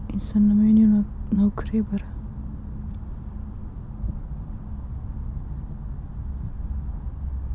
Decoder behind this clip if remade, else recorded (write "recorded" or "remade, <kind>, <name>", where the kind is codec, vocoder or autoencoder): recorded